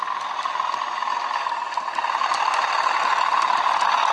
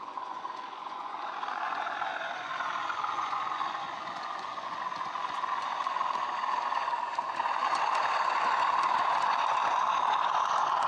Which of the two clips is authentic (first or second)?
first